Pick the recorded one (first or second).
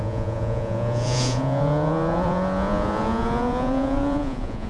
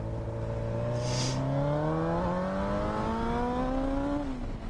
second